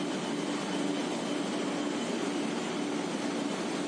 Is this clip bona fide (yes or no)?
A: yes